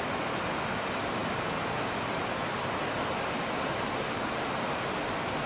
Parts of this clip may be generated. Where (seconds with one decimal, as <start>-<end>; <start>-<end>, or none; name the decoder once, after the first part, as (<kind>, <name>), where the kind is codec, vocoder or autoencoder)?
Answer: none